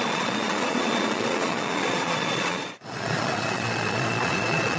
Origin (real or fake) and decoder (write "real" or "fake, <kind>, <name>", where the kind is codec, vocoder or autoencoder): fake, vocoder, Vocos